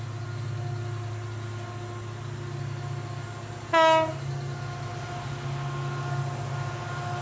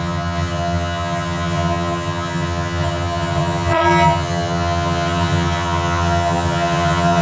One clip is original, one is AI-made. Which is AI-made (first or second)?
second